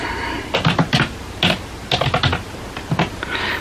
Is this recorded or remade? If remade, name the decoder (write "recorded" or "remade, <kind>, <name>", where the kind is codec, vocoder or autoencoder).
recorded